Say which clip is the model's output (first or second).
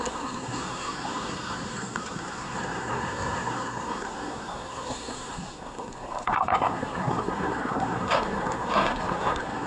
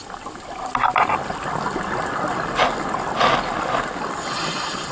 first